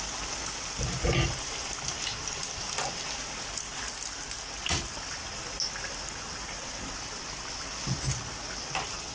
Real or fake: real